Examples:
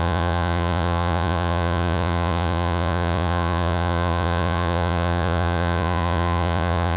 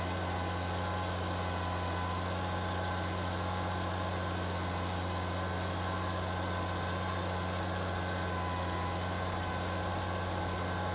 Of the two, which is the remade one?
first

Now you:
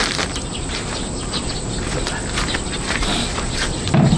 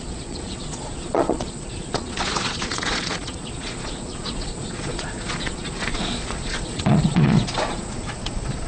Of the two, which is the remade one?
second